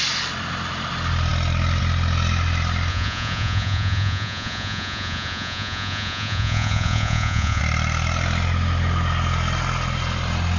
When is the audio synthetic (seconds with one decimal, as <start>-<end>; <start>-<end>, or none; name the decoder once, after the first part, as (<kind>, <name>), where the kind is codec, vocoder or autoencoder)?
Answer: 2.9-7.6 (vocoder, Vocos)